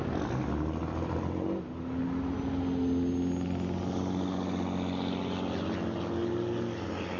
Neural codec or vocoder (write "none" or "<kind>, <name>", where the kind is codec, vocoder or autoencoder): none